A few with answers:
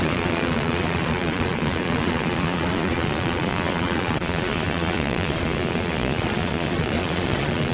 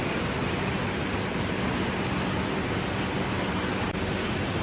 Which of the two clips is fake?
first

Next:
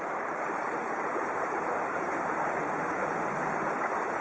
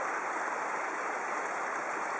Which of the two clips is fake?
first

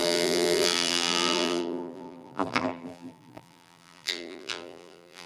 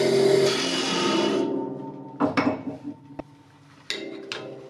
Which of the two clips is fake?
first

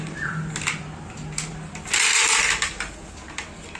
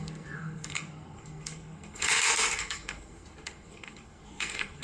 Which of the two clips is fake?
second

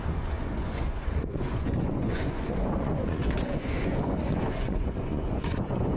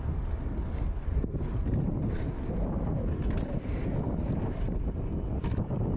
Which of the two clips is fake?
first